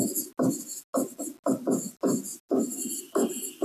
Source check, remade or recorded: recorded